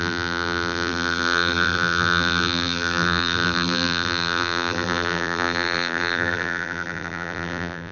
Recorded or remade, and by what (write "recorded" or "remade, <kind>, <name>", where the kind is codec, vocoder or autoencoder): remade, vocoder, BigVGAN v2